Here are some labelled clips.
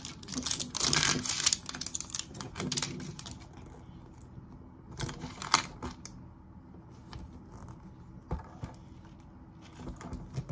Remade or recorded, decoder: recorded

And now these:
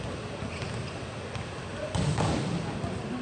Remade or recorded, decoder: recorded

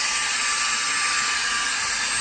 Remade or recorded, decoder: recorded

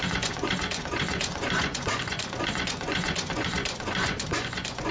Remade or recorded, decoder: remade, vocoder, Vocos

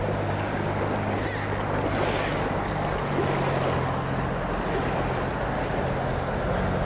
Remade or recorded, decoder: recorded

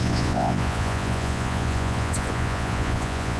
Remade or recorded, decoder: remade, vocoder, Vocos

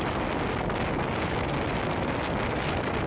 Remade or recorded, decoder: recorded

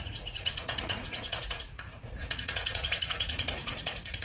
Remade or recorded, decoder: remade, vocoder, Vocos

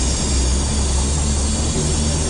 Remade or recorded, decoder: recorded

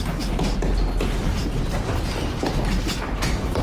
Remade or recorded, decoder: recorded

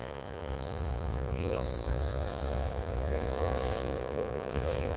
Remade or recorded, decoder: remade, vocoder, Vocos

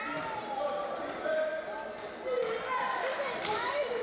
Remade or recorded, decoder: recorded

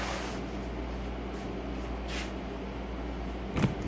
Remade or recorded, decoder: recorded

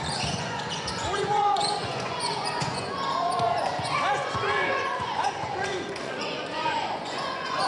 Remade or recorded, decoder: remade, vocoder, Vocos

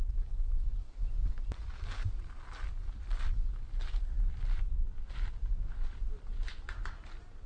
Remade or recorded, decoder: recorded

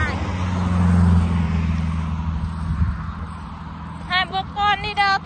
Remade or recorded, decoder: recorded